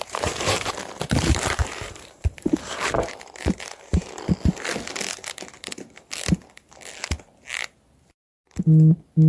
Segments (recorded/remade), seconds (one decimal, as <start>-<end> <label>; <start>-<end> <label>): 0.0-4.3 remade; 4.3-9.3 recorded

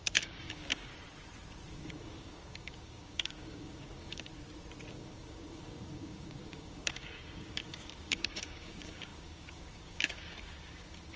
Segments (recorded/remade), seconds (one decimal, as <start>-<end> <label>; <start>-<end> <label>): 0.0-0.9 remade; 0.9-1.7 recorded; 1.7-4.3 remade; 4.3-4.9 recorded; 4.9-11.2 remade

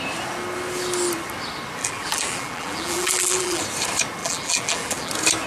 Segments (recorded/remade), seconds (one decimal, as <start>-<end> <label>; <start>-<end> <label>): 0.0-1.8 recorded; 1.8-3.6 remade; 3.6-4.2 recorded; 4.2-5.1 remade; 5.1-5.5 recorded

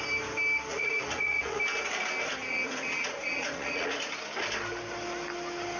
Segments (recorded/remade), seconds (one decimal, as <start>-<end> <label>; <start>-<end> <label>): 0.0-0.7 recorded; 0.7-1.6 remade; 1.6-2.4 recorded; 2.4-4.1 remade; 4.1-5.8 recorded

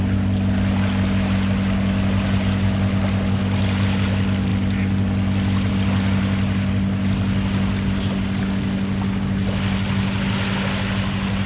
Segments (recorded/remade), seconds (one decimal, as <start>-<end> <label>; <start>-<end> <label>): 0.0-11.5 recorded

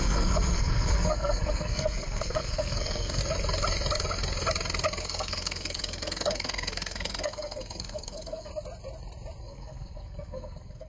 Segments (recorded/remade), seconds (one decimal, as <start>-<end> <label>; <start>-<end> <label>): 0.0-3.2 remade; 3.2-5.0 recorded; 5.0-8.5 remade; 8.5-9.4 recorded; 9.4-10.9 remade